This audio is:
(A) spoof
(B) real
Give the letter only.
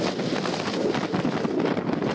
B